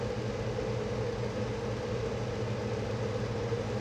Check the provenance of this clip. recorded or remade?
recorded